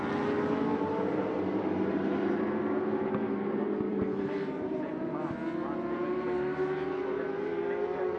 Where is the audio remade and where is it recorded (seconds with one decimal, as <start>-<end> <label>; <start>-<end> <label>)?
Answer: 0.0-0.7 recorded; 0.7-2.4 remade; 2.4-3.9 recorded; 3.9-5.1 remade; 5.1-8.2 recorded